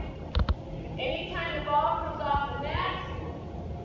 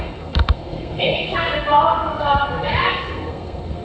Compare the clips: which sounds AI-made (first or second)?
second